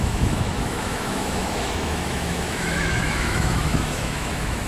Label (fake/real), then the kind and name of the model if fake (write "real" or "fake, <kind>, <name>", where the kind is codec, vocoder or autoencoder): fake, autoencoder, DAC-VAE